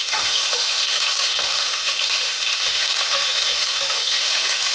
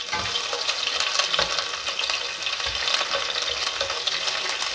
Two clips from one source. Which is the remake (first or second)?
first